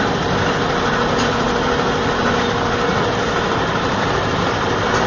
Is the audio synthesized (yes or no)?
yes